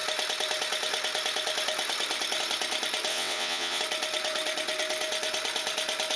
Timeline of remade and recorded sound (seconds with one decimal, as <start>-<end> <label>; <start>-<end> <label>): 0.0-3.1 recorded; 3.1-3.8 remade; 3.8-6.2 recorded

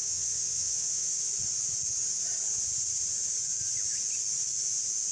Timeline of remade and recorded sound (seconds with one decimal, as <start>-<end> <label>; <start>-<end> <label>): 0.0-1.3 remade; 1.3-5.1 recorded